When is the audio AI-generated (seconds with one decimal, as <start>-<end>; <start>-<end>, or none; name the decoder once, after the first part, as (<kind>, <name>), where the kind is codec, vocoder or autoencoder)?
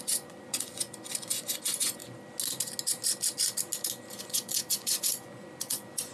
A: 0.0-2.0 (vocoder, Vocos); 4.2-6.1